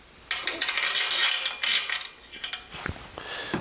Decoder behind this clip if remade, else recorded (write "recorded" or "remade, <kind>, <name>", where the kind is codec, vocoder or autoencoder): recorded